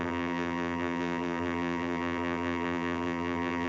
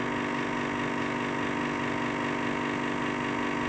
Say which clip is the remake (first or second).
first